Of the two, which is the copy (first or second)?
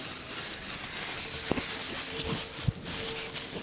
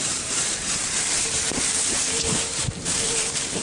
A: second